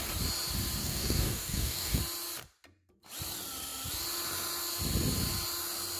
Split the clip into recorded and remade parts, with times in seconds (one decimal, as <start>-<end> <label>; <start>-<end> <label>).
0.0-0.8 recorded; 0.8-2.0 remade; 2.0-6.0 recorded